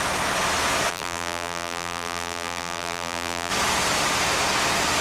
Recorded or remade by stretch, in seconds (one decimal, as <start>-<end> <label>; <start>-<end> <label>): 0.0-0.9 recorded; 0.9-3.5 remade; 3.5-5.0 recorded